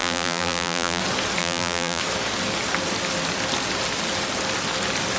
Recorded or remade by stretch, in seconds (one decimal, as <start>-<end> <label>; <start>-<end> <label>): 0.0-1.0 remade; 1.0-1.4 recorded; 1.4-2.0 remade; 2.0-5.2 recorded